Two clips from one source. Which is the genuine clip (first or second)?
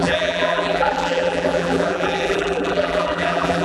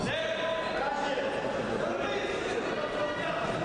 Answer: second